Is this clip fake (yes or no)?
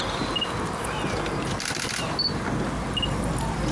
no